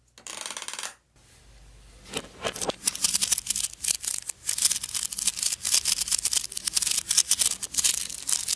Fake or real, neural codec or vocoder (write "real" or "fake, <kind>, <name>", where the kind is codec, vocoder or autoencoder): real